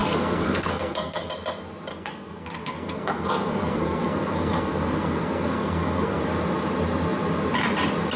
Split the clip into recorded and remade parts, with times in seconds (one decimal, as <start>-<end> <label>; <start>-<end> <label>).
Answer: 0.0-1.3 remade; 1.3-1.9 recorded; 1.9-6.2 remade; 6.2-8.2 recorded